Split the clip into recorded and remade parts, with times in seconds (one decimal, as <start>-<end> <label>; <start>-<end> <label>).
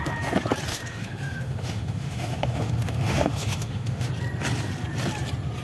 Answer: 0.0-0.7 recorded; 0.7-4.1 remade; 4.1-5.6 recorded